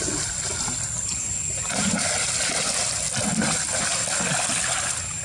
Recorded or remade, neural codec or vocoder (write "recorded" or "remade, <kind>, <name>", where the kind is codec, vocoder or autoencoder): recorded